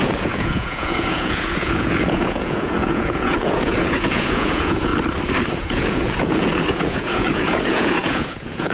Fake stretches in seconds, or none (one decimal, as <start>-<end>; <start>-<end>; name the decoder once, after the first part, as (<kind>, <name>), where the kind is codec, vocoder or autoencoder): 0.0-4.9 (vocoder, Vocos); 5.5-8.7